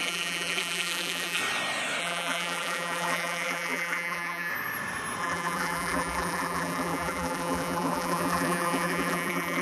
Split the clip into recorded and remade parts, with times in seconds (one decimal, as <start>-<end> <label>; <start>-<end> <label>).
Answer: 0.0-1.4 remade; 1.4-2.0 recorded; 2.0-4.5 remade; 4.5-5.2 recorded; 5.2-9.6 remade